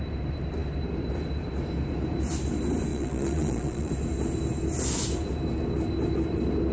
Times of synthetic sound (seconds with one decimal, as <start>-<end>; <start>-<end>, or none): 2.9-3.9